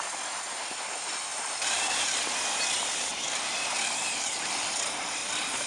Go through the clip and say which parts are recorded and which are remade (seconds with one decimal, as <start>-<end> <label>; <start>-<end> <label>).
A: 0.0-1.3 recorded; 1.3-2.2 remade; 2.2-3.1 recorded; 3.1-5.7 remade